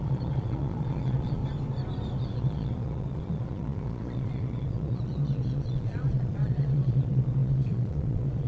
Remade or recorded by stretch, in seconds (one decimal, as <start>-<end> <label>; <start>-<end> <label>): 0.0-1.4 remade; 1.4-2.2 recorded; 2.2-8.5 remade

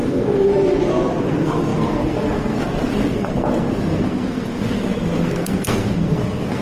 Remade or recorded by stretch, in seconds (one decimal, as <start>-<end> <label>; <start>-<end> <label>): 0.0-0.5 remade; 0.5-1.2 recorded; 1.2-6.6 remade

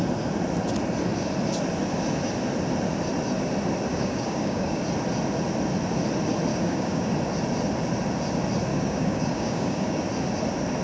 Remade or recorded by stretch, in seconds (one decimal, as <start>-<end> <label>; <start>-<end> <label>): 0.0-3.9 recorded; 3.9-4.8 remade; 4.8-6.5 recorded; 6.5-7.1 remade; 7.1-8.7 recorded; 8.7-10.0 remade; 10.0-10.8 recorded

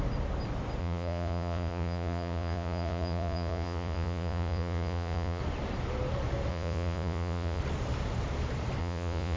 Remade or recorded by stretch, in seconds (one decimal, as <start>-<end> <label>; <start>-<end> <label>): 0.0-0.8 recorded; 0.8-5.4 remade; 5.4-6.5 recorded; 6.5-7.6 remade; 7.6-8.8 recorded; 8.8-9.4 remade

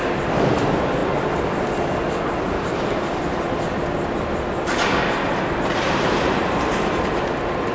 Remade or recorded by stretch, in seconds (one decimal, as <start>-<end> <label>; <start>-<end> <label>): 0.0-1.0 remade; 1.0-5.6 recorded; 5.6-7.7 remade

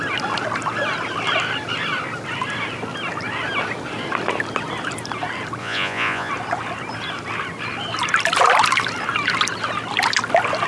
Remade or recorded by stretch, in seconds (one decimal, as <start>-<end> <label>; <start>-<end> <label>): 0.0-5.6 recorded; 5.6-6.3 remade; 6.3-10.7 recorded

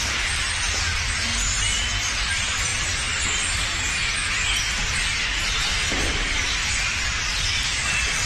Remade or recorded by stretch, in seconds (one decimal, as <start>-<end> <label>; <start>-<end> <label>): 0.0-1.3 remade; 1.3-2.2 recorded; 2.2-4.0 remade; 4.0-5.2 recorded; 5.2-8.3 remade

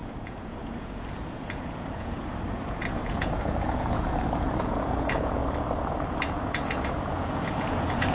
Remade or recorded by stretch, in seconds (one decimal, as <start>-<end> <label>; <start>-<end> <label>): 0.0-5.4 remade; 5.4-6.1 recorded; 6.1-8.1 remade